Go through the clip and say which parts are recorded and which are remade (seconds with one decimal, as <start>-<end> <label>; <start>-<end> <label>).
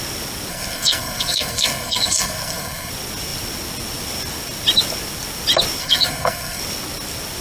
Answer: 0.0-0.5 recorded; 0.5-2.9 remade; 2.9-5.8 recorded; 5.8-6.6 remade; 6.6-7.4 recorded